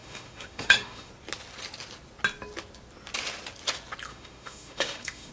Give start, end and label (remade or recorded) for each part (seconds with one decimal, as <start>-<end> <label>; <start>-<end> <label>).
0.0-1.1 remade; 1.1-4.1 recorded; 4.1-5.3 remade